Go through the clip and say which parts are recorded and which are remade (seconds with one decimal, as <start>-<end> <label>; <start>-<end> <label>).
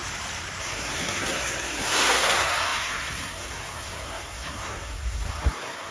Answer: 0.0-0.6 recorded; 0.6-5.9 remade